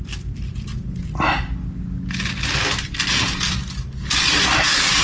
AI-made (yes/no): no